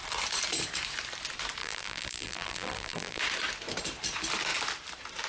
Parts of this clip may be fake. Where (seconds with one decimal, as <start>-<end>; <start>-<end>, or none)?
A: 1.6-3.2